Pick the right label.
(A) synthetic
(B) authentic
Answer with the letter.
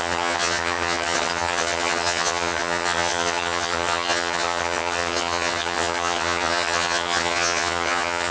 A